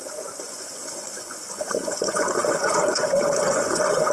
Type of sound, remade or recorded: remade